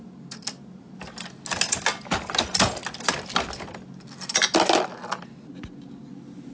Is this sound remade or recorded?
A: recorded